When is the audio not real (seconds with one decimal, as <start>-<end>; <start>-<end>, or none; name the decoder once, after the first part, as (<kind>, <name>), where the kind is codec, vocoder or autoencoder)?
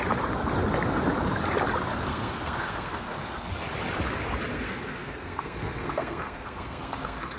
2.1-3.5 (codec, SNAC); 4.5-7.4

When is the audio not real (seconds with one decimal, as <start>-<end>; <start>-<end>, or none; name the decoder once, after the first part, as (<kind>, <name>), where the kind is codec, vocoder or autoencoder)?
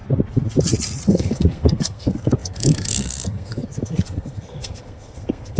1.1-5.6 (codec, SNAC)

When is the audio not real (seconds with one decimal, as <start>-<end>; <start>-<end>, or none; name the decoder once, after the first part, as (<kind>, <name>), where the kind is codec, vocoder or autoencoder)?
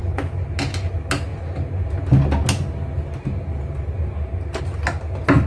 none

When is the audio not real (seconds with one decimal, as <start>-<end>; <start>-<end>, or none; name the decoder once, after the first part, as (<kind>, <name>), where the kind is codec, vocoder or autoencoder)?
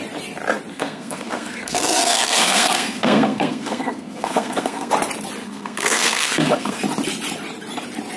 0.7-4.9 (codec, SNAC); 5.4-6.8